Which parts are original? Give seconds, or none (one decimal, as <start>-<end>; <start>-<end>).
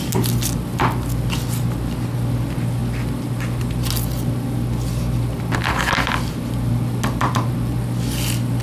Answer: 0.0-8.6